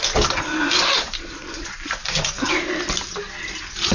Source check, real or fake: real